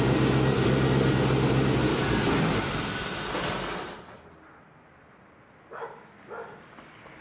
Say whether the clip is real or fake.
real